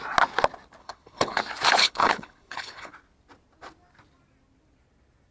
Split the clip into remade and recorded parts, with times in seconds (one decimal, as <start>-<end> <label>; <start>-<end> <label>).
0.0-0.8 recorded; 0.8-1.4 remade; 1.4-1.8 recorded; 1.8-2.9 remade; 2.9-5.3 recorded